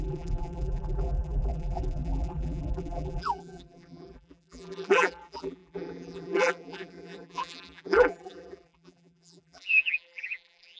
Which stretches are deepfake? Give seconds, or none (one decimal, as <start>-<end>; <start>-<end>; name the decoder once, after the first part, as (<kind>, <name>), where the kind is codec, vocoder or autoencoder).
0.0-10.8 (vocoder, BigVGAN v2)